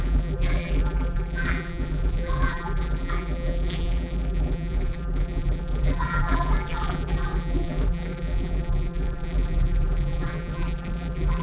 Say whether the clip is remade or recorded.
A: remade